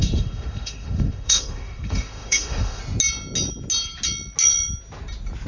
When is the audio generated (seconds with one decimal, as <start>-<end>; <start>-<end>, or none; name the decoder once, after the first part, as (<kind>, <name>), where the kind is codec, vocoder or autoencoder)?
0.0-2.8 (autoencoder, DAC-VAE)